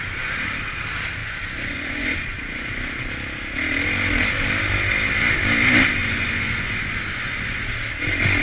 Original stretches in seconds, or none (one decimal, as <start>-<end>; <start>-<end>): 0.0-1.2; 3.1-6.0; 7.7-8.4